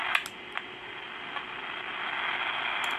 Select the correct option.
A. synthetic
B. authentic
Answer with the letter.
B